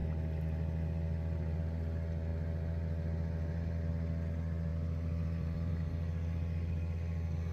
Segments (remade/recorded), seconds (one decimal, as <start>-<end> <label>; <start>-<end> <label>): 0.0-4.7 recorded; 4.7-5.7 remade; 5.7-7.5 recorded